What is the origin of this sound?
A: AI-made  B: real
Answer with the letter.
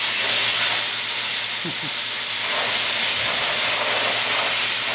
B